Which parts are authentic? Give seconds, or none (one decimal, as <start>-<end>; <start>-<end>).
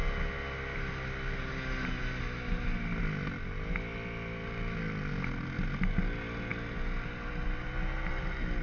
0.0-8.6